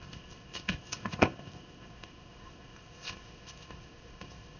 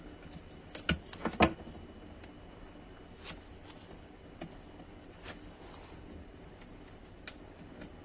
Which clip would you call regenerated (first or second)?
first